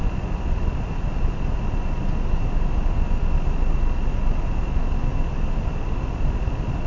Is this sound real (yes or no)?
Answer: yes